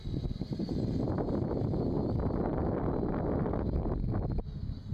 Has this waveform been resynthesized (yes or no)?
no